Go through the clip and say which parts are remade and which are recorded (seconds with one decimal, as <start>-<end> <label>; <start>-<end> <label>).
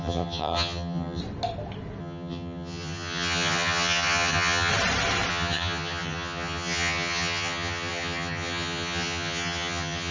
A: 0.0-1.2 remade; 1.2-2.0 recorded; 2.0-4.7 remade; 4.7-5.3 recorded; 5.3-10.1 remade